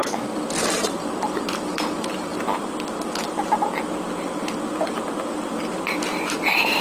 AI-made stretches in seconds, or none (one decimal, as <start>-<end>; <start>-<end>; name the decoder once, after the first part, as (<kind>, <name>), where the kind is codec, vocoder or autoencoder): 0.6-2.3 (vocoder, BigVGAN v2); 6.3-6.8